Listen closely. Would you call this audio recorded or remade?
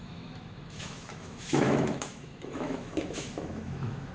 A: remade